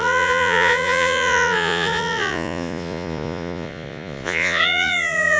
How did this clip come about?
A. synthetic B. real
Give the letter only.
A